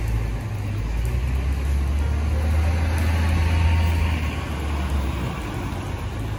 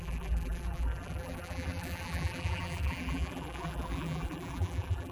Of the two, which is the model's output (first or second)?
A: second